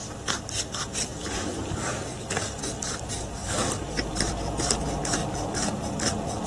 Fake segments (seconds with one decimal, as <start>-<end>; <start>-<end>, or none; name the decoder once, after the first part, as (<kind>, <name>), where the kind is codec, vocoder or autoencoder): 1.1-1.8 (vocoder, BigVGAN v2); 3.4-4.8